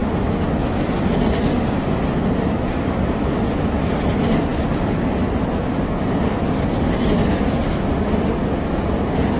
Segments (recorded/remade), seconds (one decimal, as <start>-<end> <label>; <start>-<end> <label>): 0.0-3.3 remade; 3.3-9.4 recorded